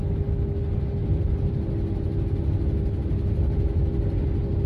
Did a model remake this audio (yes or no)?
no